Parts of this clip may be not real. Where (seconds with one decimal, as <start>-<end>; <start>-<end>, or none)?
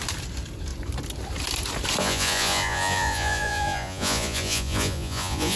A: 2.0-5.6